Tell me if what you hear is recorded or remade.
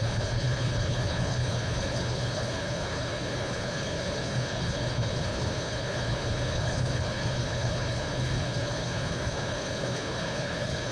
remade